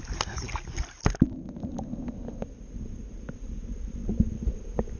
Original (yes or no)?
yes